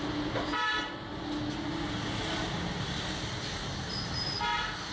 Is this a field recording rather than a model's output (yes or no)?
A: yes